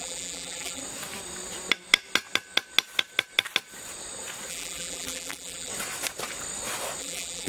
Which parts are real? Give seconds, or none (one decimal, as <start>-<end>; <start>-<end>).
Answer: 0.8-4.5; 5.7-7.0